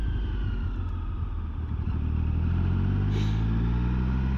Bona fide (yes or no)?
yes